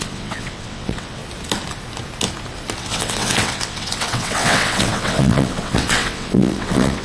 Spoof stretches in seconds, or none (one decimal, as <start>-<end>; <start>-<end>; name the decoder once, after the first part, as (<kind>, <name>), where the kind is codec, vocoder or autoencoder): 0.0-1.2 (vocoder, WaveNeXt); 2.8-7.0